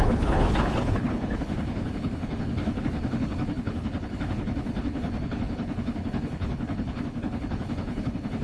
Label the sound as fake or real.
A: fake